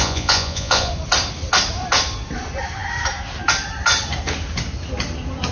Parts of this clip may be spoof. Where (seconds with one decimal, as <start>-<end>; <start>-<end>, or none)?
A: 0.0-0.9